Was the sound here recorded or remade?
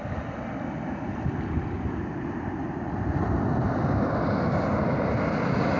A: recorded